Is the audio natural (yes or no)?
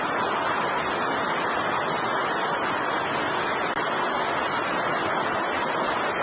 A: yes